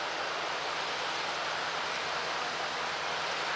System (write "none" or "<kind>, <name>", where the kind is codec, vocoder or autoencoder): none